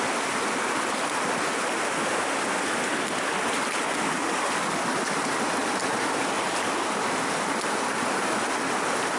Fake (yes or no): no